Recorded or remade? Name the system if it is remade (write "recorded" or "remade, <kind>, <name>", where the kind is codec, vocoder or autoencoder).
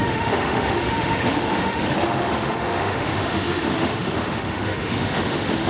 remade, autoencoder, DAC-VAE